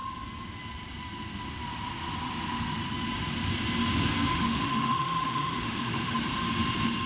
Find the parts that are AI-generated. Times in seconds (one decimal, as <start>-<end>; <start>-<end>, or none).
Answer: 4.3-6.2